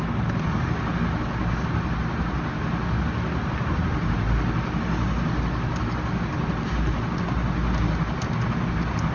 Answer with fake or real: real